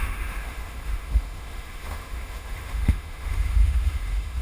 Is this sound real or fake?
fake